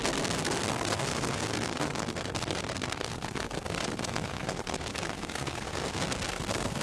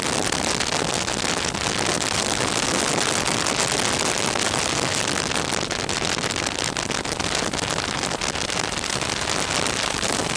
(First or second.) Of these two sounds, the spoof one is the first